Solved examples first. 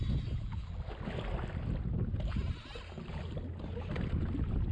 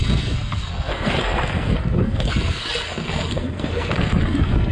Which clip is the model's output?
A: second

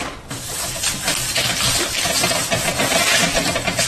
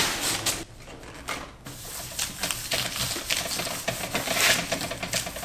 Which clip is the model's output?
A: first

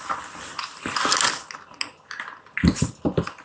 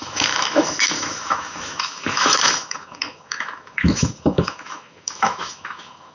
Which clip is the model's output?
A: second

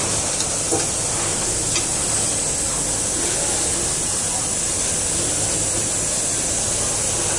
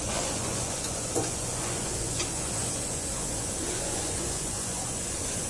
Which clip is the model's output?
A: second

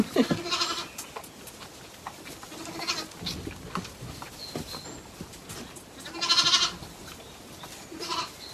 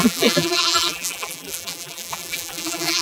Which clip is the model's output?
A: second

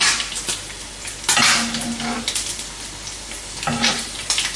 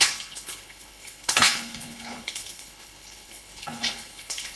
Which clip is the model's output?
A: second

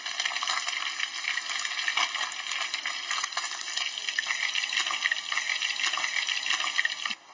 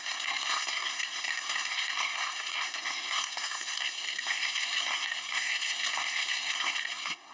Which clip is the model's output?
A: second